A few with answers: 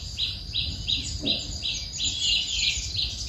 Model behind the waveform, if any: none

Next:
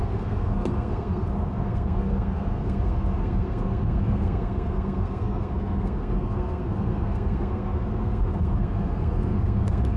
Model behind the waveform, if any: codec, SNAC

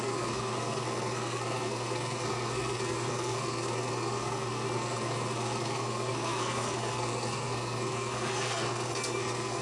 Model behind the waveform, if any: codec, SNAC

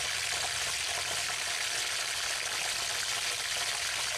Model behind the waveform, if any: none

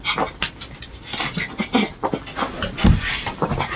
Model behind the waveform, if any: none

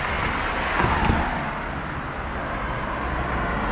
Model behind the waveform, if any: none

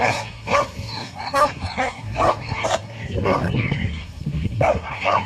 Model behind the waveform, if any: codec, SNAC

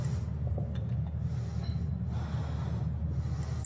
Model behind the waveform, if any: none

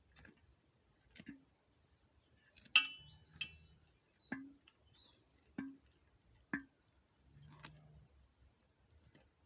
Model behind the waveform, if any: none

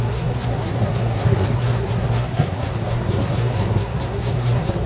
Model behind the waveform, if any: codec, SNAC